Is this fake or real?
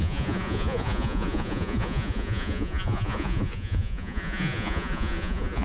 fake